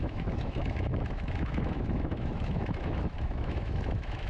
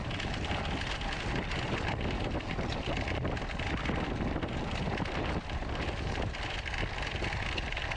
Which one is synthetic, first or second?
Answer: first